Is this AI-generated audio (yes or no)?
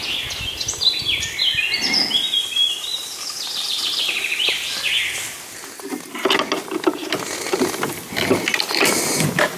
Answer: no